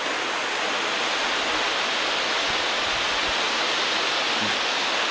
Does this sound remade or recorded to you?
recorded